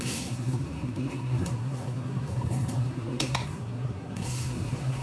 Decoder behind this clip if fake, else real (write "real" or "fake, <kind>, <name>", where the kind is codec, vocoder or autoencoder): fake, codec, SNAC